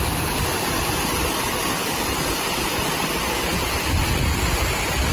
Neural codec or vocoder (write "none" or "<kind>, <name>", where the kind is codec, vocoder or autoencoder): none